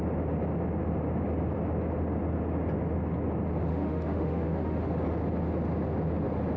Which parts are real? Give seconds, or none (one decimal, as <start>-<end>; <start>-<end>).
0.0-3.7; 4.9-6.6